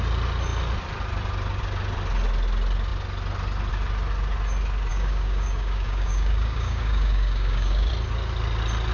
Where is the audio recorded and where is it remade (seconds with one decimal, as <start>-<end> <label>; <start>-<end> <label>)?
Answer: 0.0-4.9 recorded; 4.9-7.9 remade; 7.9-8.9 recorded